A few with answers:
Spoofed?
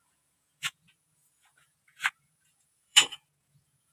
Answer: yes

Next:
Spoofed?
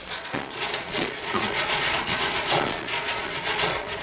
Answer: yes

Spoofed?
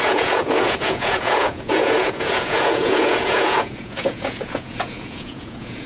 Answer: yes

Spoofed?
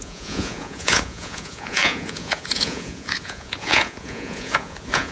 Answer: yes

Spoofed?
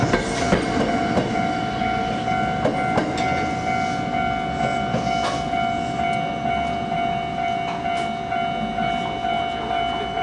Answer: no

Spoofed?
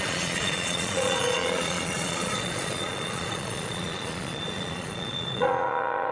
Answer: yes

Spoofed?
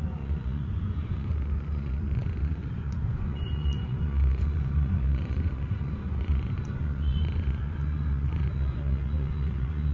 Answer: yes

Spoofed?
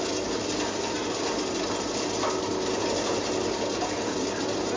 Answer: no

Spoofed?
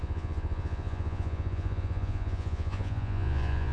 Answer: yes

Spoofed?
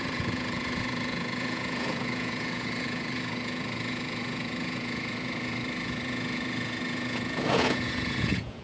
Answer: yes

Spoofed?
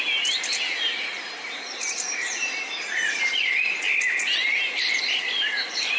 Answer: no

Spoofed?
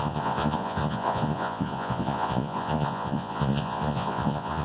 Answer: yes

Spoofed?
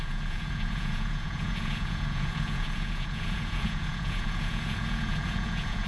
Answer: yes